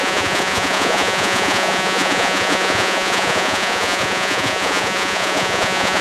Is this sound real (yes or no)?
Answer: no